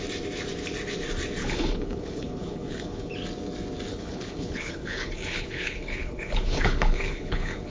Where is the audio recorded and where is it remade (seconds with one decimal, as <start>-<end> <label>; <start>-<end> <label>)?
0.0-1.4 recorded; 1.4-3.1 remade; 3.1-3.9 recorded; 3.9-7.7 remade